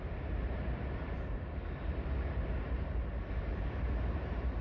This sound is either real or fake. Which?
fake